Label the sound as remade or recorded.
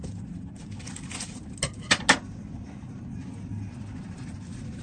recorded